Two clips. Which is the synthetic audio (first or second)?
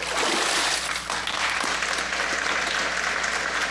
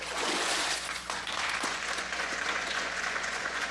second